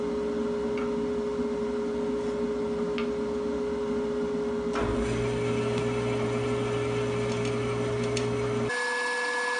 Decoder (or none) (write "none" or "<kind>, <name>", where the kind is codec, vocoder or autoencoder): none